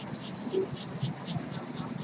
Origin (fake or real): real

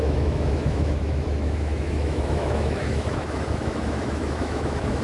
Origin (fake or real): fake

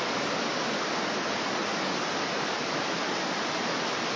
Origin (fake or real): real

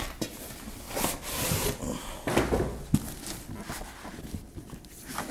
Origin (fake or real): real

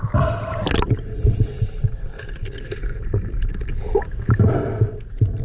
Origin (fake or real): real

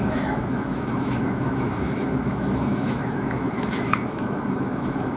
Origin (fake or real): fake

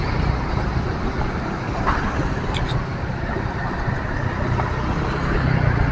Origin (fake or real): real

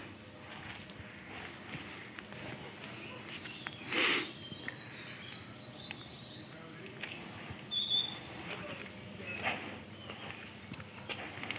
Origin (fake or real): real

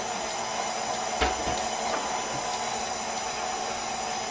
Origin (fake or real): real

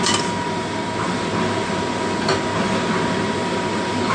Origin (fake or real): real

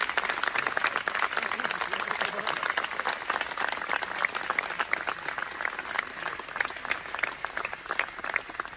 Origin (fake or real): real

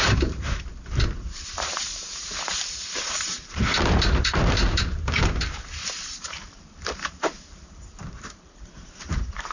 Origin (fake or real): fake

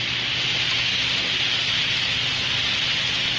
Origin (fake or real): real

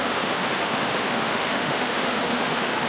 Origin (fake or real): fake